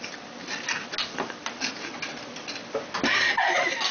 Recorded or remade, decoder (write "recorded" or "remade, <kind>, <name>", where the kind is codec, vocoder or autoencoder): recorded